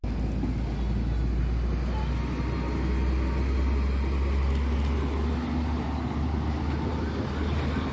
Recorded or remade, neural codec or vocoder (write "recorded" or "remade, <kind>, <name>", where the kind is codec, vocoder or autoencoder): recorded